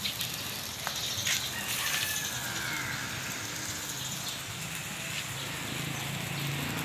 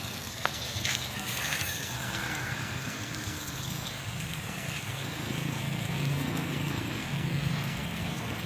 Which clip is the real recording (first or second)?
first